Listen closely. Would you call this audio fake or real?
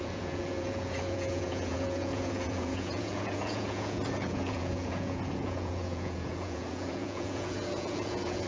fake